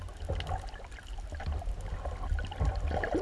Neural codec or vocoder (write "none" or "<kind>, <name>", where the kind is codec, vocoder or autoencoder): none